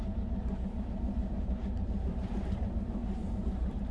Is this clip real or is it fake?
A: fake